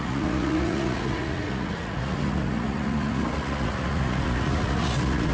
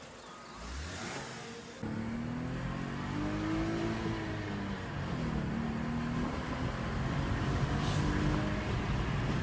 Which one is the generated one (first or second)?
first